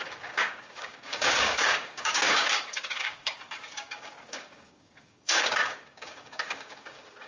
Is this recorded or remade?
remade